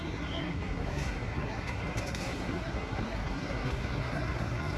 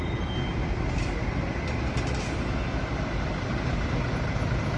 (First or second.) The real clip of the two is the second